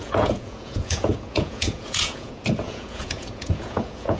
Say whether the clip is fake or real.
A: fake